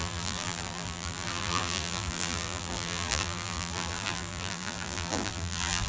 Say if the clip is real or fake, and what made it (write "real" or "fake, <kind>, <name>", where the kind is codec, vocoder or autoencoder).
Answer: fake, vocoder, BigVGAN v2